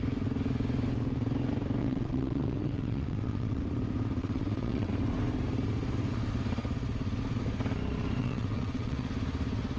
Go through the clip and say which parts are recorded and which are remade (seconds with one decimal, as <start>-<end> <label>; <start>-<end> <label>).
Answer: 0.0-1.8 recorded; 1.8-3.6 remade; 3.6-4.2 recorded; 4.2-4.9 remade; 4.9-8.2 recorded; 8.2-9.1 remade; 9.1-9.8 recorded